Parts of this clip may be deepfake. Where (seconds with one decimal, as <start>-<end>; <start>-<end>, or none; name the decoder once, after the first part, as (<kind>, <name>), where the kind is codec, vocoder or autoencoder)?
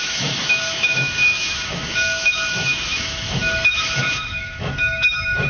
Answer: 0.0-5.5 (autoencoder, DAC-VAE)